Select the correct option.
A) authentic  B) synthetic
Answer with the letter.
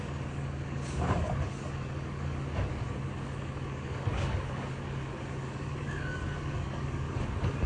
B